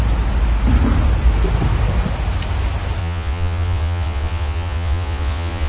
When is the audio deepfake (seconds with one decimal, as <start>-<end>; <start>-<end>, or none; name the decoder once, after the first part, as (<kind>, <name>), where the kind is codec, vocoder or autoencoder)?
3.0-5.7 (vocoder, Vocos)

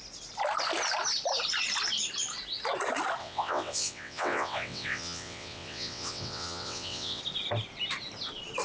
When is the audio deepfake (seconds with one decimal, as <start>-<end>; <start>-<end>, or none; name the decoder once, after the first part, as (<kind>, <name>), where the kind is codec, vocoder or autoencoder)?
3.2-7.2 (vocoder, WaveNeXt)

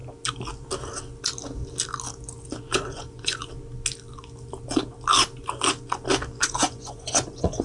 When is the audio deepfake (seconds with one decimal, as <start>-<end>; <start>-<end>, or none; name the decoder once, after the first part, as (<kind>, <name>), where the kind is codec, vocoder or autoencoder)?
2.6-3.4 (vocoder, Vocos); 6.4-7.6

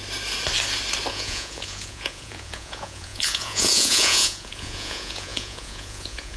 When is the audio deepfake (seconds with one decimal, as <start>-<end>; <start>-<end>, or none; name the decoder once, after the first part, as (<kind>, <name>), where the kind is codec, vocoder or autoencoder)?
1.1-6.4 (vocoder, Vocos)

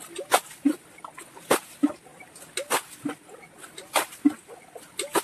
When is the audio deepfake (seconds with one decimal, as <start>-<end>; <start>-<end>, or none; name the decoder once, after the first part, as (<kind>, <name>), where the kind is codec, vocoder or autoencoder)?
none

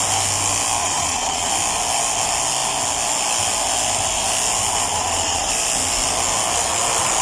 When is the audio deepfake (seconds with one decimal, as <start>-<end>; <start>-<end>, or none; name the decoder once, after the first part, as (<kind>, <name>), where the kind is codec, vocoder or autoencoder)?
0.8-1.5 (vocoder, Vocos); 4.9-5.5

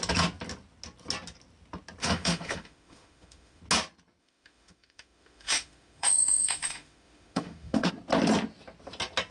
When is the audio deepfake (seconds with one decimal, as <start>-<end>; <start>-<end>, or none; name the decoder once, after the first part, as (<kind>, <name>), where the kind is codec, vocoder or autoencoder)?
2.0-3.6 (autoencoder, DAC-VAE); 4.2-7.9